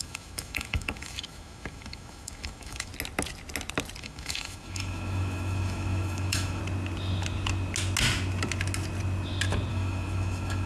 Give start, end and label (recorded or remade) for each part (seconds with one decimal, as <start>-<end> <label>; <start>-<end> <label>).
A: 0.0-2.9 remade; 2.9-4.0 recorded; 4.0-6.6 remade; 6.6-9.7 recorded; 9.7-10.7 remade